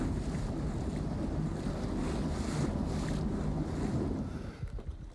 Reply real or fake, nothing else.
real